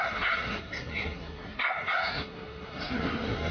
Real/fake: fake